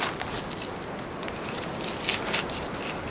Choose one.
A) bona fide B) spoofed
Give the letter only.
A